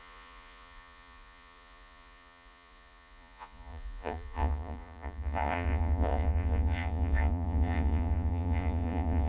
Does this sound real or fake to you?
fake